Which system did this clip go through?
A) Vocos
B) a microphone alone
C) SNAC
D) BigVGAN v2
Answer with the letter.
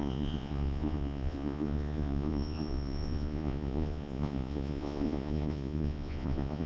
A